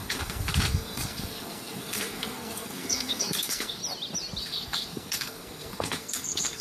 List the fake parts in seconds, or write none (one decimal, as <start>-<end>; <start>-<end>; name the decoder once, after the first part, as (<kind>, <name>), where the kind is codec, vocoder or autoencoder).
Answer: 0.0-3.8 (codec, SNAC); 4.4-6.6